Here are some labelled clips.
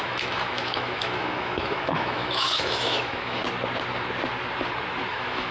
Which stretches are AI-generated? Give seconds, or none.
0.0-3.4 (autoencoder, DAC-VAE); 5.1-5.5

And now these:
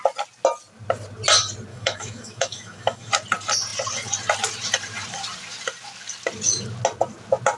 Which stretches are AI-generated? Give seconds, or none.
1.7-3.1 (autoencoder, DAC-VAE)

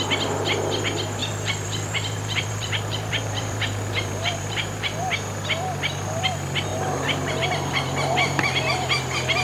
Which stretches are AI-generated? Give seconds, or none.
1.2-5.0 (vocoder, BigVGAN v2); 6.7-9.0

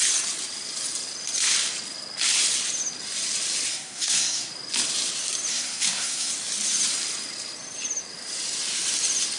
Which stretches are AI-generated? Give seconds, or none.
3.7-4.5 (codec, SNAC); 5.5-6.3

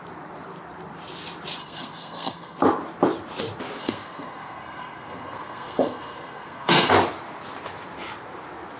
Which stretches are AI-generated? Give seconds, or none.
1.6-2.6 (codec, SNAC); 3.8-6.9

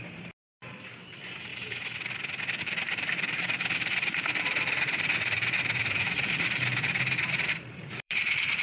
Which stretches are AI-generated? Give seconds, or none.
0.0-1.5 (vocoder, BigVGAN v2); 2.6-8.6